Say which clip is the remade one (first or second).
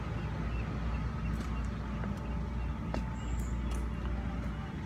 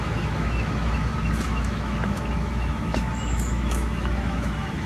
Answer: second